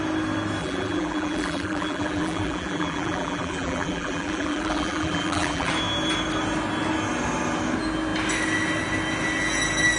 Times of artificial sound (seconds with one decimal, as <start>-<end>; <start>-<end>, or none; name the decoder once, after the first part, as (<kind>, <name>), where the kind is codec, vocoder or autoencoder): 0.6-5.7 (vocoder, BigVGAN v2)